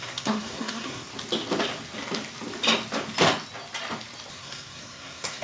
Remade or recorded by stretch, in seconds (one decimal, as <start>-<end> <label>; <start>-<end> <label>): 0.0-1.1 remade; 1.1-4.3 recorded; 4.3-5.4 remade